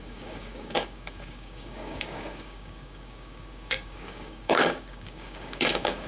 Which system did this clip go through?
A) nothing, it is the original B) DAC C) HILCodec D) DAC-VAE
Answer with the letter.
B